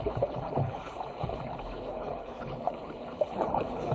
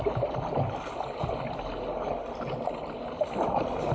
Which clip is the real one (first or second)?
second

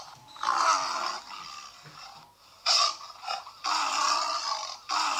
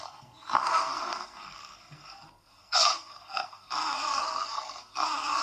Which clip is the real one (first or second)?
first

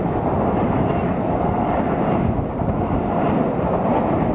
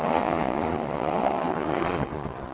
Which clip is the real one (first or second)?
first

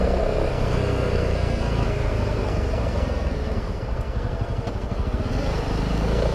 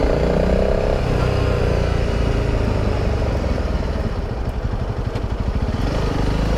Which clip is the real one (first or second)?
second